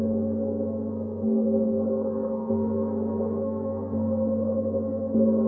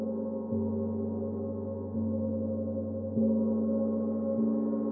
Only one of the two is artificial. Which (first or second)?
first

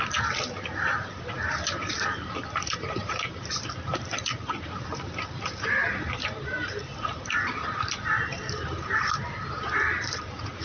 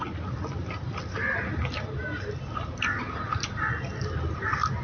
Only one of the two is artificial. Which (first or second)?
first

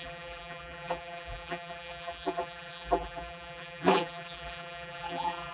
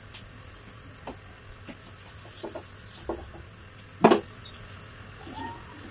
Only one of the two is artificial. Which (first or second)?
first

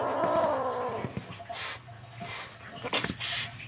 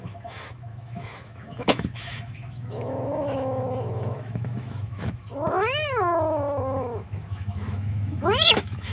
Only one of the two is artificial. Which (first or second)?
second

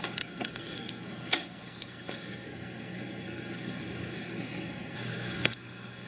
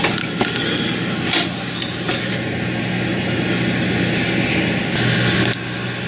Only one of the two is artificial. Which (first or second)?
first